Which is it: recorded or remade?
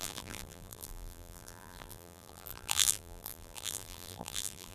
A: remade